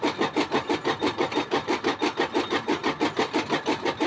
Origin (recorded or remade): recorded